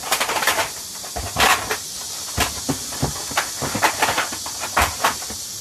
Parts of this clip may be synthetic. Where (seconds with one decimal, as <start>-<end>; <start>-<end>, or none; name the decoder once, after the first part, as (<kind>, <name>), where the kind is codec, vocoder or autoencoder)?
0.0-1.5 (vocoder, BigVGAN v2); 4.9-5.6